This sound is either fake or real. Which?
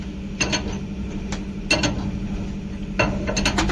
real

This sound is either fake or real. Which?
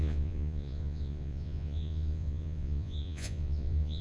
fake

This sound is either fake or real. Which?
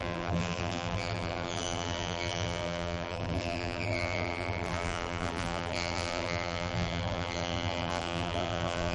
fake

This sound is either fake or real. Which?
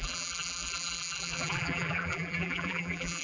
fake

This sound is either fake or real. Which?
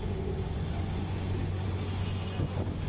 fake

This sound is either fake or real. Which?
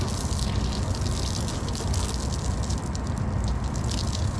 real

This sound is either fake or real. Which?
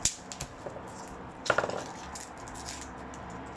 real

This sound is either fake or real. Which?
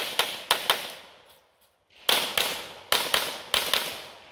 real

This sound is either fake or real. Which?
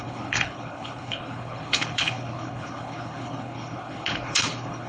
fake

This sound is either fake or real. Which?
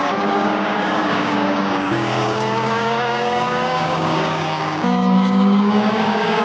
fake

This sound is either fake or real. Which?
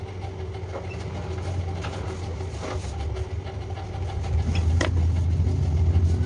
real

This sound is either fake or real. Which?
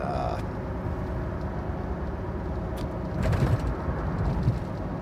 real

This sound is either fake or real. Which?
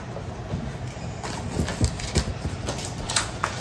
real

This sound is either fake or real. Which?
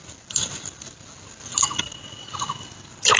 real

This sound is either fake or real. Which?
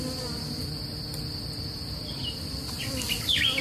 real